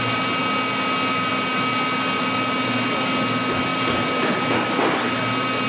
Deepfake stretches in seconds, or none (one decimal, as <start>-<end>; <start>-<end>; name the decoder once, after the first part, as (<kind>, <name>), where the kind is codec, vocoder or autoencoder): none